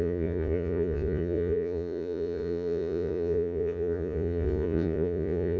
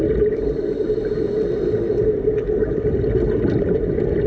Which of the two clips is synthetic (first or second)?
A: first